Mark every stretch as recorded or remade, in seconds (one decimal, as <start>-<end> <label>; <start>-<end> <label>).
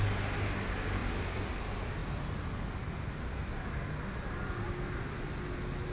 0.0-1.0 recorded; 1.0-1.5 remade; 1.5-5.9 recorded